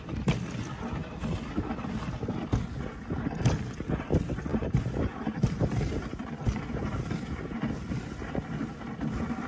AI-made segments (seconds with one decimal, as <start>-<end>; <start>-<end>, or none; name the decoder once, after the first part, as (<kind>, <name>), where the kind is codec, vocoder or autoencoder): 4.5-6.6 (vocoder, BigVGAN v2)